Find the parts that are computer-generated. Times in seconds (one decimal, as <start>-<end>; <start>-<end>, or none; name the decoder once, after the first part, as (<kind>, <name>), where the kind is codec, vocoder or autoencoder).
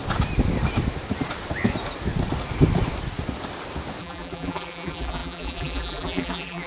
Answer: 4.0-6.7 (vocoder, BigVGAN v2)